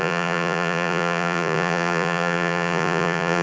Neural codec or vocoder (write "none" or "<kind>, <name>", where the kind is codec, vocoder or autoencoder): vocoder, Vocos